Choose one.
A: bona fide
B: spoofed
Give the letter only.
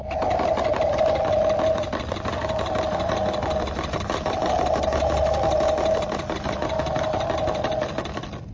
A